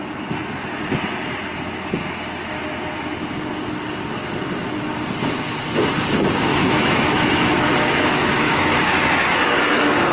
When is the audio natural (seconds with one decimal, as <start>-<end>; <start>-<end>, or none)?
0.0-6.5; 8.6-10.1